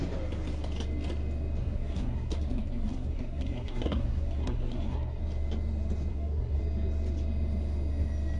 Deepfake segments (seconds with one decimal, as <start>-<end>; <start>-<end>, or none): 1.6-5.2; 6.1-6.6